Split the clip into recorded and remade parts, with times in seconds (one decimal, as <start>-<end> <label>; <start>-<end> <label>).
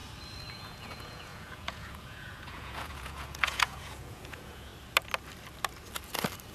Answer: 0.0-0.5 recorded; 0.5-4.7 remade; 4.7-6.5 recorded